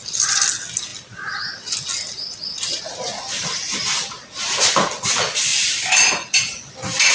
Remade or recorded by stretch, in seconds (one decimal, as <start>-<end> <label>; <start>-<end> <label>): 0.0-7.1 recorded